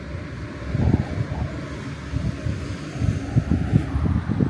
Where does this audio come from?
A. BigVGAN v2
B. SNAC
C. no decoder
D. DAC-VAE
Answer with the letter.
C